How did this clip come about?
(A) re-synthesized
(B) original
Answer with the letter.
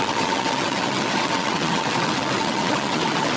A